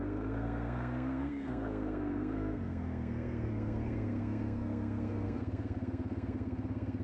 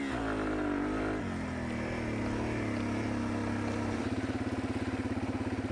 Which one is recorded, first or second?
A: second